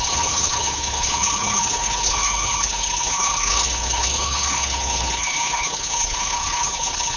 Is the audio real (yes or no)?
no